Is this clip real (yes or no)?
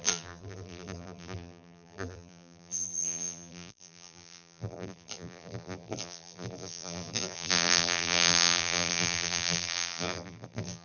no